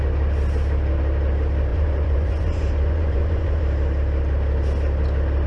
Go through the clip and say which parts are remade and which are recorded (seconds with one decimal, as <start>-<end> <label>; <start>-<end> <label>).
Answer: 0.0-1.7 recorded; 1.7-3.6 remade; 3.6-5.5 recorded